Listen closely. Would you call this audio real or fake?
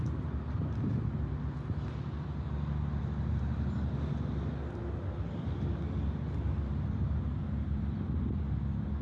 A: real